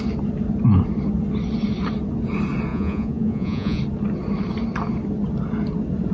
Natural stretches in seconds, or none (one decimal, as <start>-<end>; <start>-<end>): 0.0-2.7; 3.8-6.1